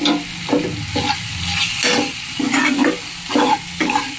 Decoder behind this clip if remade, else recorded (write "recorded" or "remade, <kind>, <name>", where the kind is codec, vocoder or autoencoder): recorded